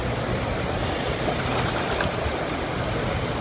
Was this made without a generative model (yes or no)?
no